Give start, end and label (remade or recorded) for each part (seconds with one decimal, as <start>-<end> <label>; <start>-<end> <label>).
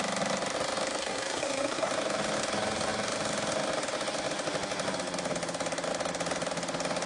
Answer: 0.0-1.0 recorded; 1.0-1.9 remade; 1.9-7.1 recorded